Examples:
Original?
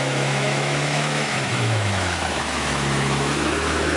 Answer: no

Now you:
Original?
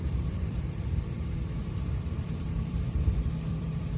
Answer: no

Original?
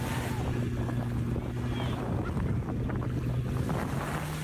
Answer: yes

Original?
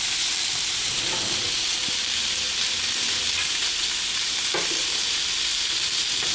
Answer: yes